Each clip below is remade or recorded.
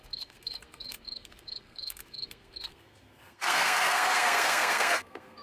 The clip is remade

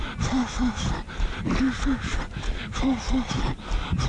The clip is recorded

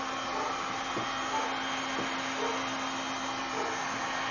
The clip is recorded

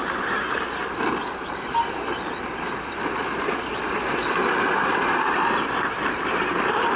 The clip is recorded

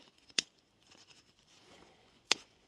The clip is remade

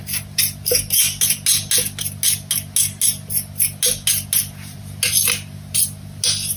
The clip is recorded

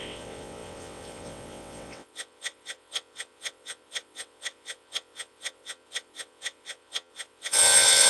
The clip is remade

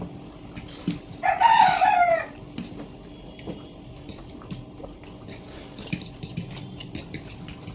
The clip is recorded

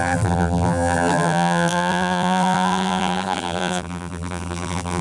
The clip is remade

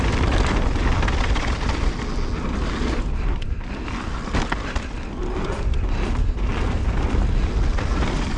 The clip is recorded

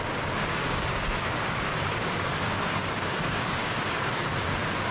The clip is remade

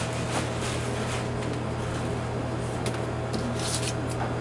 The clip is recorded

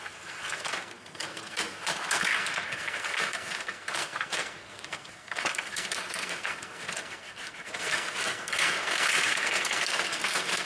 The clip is remade